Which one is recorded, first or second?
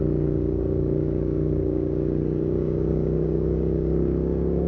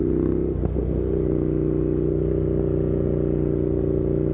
second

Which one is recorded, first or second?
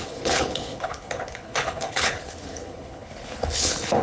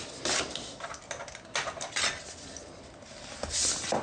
second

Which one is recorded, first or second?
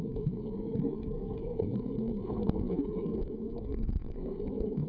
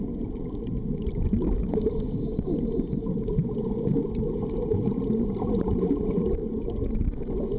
second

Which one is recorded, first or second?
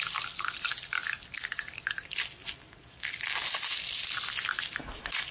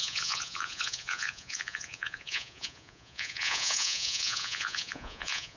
first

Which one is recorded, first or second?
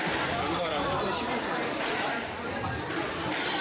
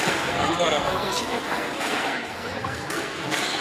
first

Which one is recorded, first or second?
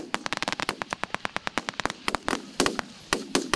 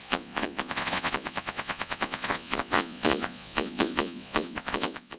first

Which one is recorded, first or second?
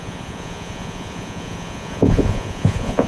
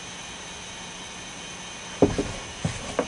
second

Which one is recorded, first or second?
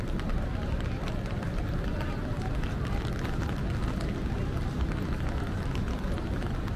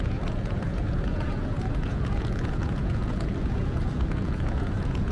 first